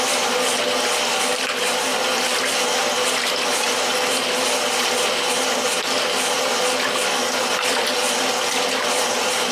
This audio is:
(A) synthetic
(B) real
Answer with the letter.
B